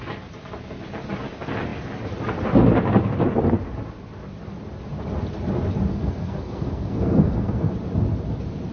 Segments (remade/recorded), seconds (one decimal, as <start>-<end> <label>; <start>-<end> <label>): 0.0-5.9 recorded; 5.9-7.7 remade; 7.7-8.7 recorded